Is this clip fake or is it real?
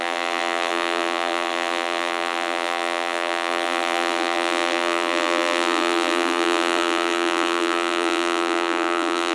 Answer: fake